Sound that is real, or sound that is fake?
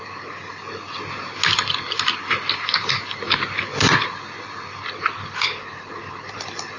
real